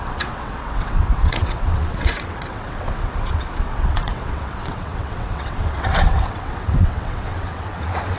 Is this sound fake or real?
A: fake